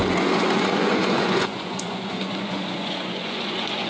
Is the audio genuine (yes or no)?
no